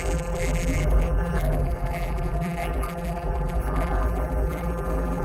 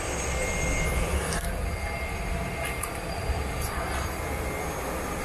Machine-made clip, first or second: first